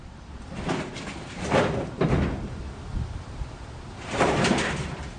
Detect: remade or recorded remade